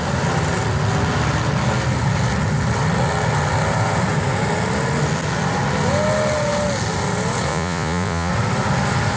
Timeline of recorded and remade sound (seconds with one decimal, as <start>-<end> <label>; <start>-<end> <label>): 0.0-7.5 recorded; 7.5-8.3 remade; 8.3-9.2 recorded